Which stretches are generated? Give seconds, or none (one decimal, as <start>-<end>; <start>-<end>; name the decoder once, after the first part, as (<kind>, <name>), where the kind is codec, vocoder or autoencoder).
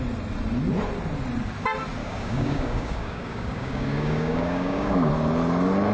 2.0-5.1 (codec, DAC)